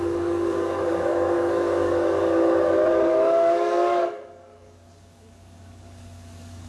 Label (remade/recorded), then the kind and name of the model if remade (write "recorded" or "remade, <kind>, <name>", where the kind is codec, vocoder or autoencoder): remade, codec, DAC